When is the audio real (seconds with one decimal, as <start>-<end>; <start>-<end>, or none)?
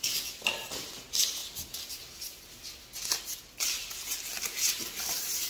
0.0-5.5